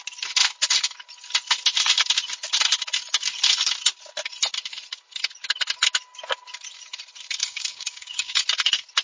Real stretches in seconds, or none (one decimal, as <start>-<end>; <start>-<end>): 0.0-7.4; 8.4-9.0